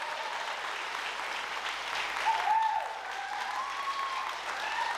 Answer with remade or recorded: recorded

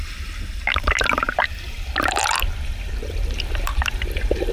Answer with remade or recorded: recorded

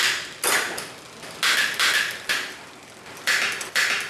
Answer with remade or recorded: recorded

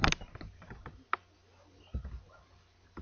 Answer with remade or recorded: recorded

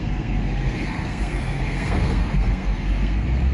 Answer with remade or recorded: remade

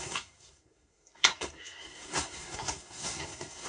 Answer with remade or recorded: remade